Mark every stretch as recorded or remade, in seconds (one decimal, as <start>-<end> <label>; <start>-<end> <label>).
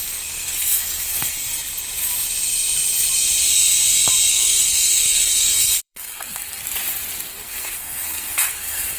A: 0.0-1.5 remade; 1.5-4.3 recorded; 4.3-6.6 remade; 6.6-7.3 recorded; 7.3-9.0 remade